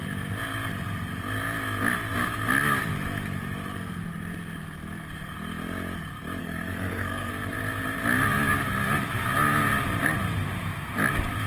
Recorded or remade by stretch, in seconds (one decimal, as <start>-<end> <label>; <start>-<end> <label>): 0.0-6.4 recorded; 6.4-7.3 remade; 7.3-11.5 recorded